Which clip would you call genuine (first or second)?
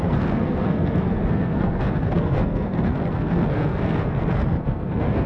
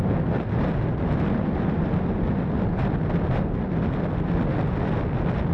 second